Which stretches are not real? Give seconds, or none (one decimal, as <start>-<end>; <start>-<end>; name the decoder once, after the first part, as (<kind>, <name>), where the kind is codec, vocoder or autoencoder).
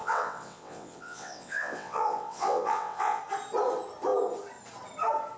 0.0-3.2 (vocoder, WaveNeXt)